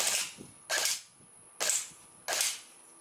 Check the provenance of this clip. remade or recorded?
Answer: recorded